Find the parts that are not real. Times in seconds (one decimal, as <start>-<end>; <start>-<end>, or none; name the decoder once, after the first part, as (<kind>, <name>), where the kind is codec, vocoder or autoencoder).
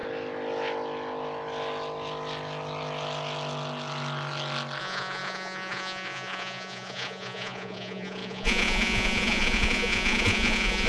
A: 4.8-10.9 (vocoder, Vocos)